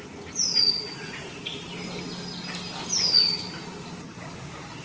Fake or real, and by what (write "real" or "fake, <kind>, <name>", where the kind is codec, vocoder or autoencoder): real